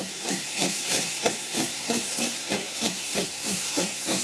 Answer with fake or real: fake